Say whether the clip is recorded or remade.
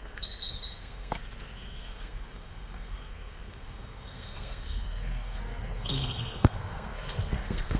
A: remade